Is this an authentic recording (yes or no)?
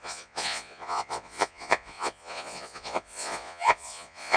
no